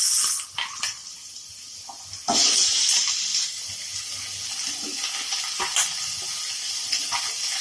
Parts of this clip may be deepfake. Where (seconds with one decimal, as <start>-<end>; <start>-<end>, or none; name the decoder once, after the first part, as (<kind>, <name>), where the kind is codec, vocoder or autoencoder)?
none